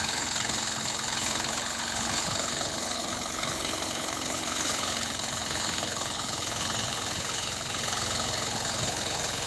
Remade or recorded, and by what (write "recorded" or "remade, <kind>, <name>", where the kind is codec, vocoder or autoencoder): remade, codec, HILCodec